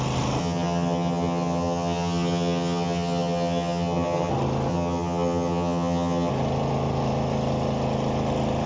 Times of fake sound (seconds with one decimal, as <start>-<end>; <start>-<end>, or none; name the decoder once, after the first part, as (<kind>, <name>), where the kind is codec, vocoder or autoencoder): 0.4-4.3 (vocoder, HiFi-GAN); 4.7-6.3